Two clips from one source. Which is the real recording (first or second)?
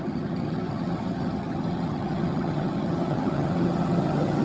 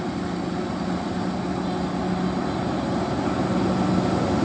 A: second